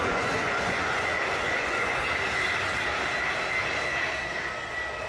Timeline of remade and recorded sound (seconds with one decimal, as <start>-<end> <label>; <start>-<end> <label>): 0.0-2.0 remade; 2.0-5.1 recorded